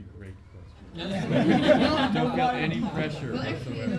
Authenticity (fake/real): real